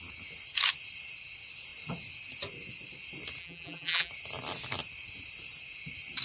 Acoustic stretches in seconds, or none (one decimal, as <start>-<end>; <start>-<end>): 0.0-3.4; 4.1-6.2